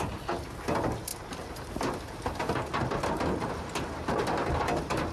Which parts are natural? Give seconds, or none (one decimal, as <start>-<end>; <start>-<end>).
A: 0.0-5.1